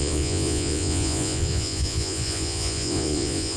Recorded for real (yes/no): no